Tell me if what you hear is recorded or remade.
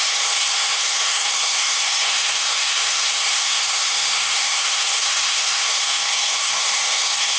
remade